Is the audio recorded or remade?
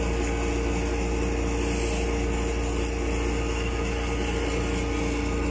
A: recorded